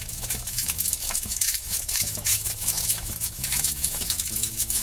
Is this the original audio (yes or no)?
no